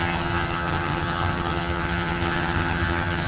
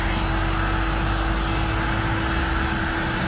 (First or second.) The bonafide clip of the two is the second